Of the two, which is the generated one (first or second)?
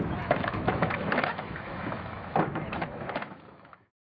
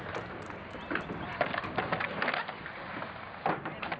first